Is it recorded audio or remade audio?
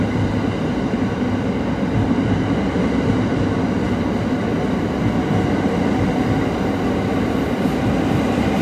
recorded